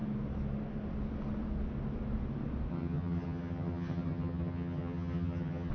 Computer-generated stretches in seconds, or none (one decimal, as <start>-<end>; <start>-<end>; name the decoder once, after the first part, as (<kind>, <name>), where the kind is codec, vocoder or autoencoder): 2.7-5.7 (vocoder, HiFi-GAN)